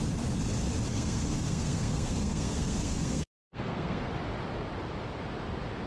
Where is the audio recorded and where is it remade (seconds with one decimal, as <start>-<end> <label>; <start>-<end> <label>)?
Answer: 0.0-0.9 recorded; 0.9-4.1 remade; 4.1-5.9 recorded